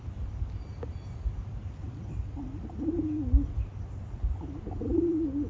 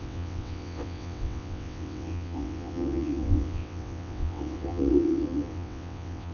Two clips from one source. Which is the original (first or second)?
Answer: first